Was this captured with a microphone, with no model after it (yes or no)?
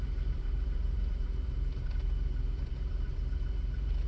no